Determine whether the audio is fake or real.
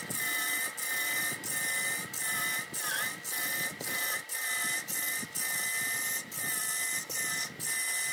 real